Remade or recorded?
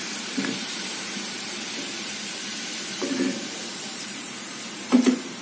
remade